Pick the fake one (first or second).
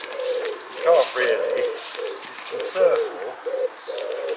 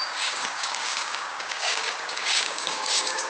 second